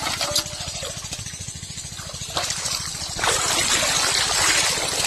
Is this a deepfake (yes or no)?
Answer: no